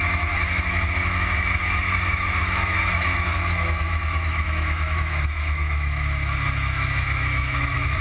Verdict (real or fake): fake